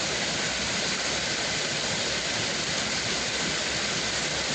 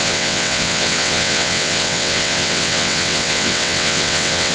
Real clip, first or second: first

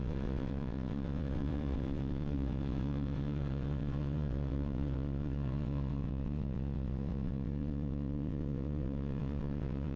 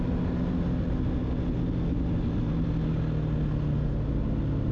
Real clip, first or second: second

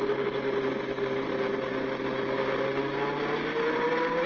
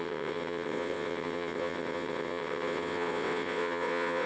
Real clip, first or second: first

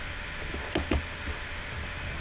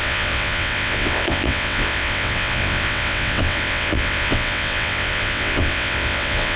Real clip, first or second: first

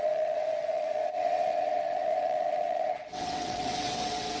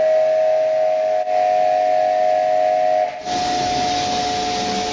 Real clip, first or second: second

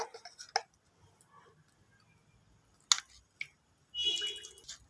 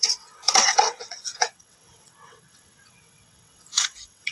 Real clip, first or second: first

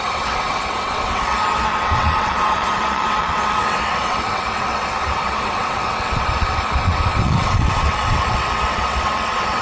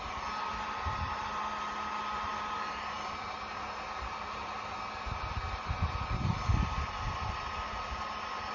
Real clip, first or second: second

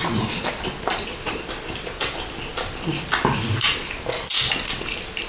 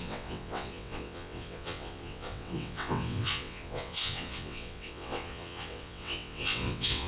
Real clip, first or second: first